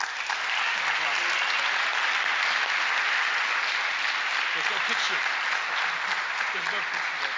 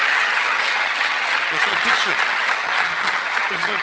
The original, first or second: first